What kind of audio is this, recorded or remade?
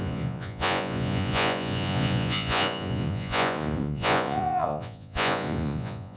remade